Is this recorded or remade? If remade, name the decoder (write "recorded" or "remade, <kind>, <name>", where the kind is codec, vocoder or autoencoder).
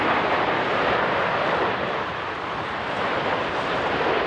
recorded